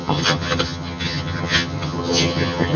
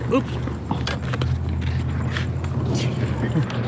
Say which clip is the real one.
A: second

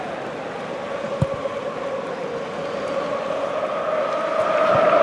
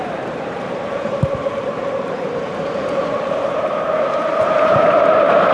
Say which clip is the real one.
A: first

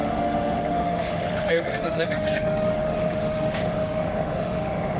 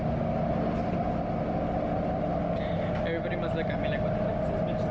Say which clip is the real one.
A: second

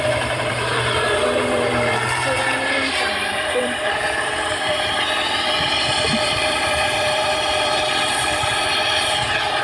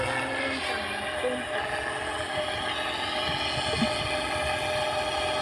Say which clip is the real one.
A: second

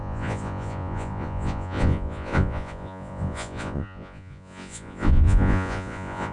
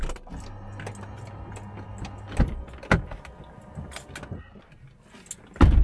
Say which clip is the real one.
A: second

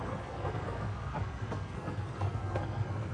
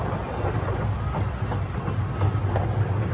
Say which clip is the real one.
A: second